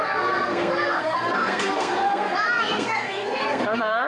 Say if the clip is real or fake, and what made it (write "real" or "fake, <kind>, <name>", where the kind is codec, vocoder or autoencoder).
fake, codec, SNAC